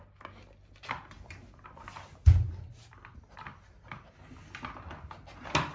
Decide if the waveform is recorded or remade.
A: recorded